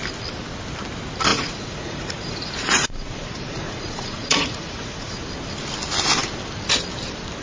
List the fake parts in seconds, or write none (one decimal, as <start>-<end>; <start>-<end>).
1.3-5.2